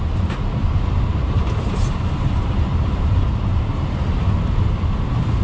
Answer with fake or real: fake